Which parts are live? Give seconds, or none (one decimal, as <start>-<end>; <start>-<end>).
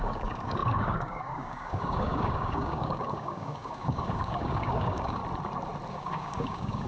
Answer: 5.2-5.9